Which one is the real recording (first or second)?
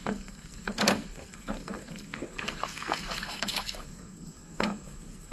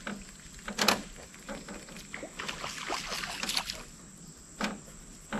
second